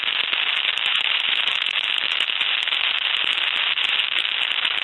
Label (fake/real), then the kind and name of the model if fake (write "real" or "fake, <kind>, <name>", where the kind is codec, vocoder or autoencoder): real